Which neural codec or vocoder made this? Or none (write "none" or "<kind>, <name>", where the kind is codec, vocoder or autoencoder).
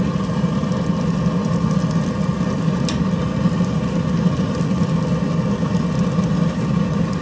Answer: none